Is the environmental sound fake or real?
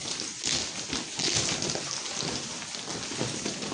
real